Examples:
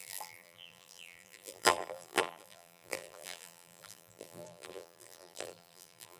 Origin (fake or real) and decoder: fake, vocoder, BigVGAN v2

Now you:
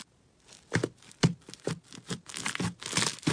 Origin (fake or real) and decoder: real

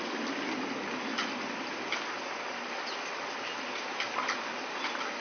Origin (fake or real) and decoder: real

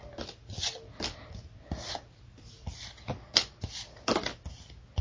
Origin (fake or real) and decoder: real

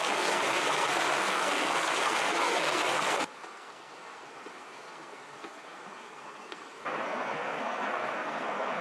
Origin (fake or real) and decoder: fake, codec, SNAC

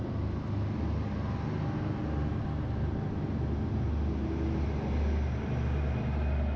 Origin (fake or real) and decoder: real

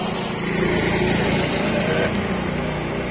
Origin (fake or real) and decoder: real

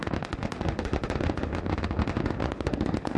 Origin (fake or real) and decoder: fake, autoencoder, DAC-VAE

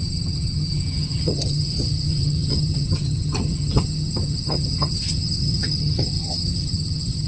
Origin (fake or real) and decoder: fake, vocoder, HiFi-GAN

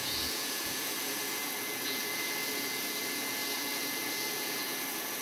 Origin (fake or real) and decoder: fake, vocoder, Vocos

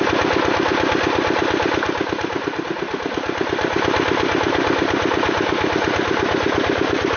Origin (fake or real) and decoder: real